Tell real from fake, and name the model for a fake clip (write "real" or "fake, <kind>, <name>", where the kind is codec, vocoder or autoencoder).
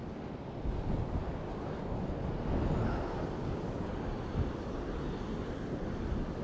real